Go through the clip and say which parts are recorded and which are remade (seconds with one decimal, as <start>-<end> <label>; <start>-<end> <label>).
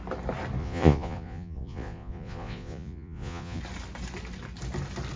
0.0-0.6 recorded; 0.6-3.6 remade; 3.6-5.2 recorded